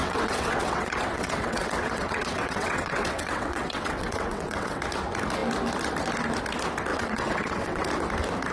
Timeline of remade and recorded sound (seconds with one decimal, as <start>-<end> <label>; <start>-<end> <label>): 0.0-4.8 remade; 4.8-6.9 recorded; 6.9-7.8 remade; 7.8-8.5 recorded